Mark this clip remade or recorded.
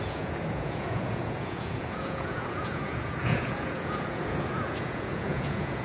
remade